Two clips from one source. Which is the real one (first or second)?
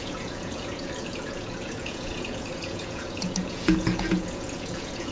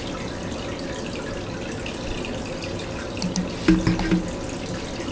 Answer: second